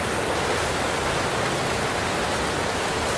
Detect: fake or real real